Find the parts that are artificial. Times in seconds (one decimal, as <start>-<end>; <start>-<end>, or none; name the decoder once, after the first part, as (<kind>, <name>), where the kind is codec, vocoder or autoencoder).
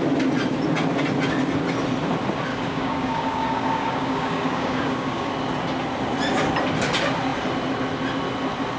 2.5-5.3 (codec, DAC)